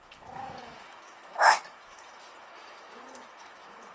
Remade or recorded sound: remade